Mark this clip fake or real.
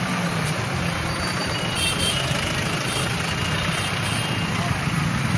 real